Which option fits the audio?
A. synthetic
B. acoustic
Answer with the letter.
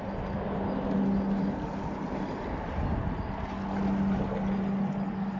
B